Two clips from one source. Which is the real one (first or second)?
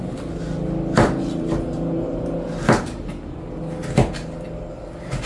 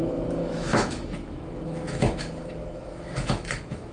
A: first